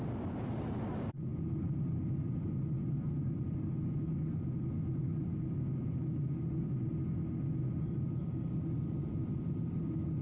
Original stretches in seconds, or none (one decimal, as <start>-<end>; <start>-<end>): 0.0-10.2